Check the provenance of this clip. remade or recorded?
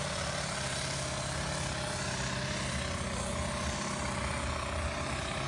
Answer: recorded